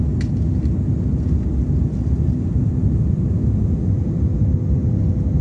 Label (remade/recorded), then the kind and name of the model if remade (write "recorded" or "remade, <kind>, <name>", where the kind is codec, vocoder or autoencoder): recorded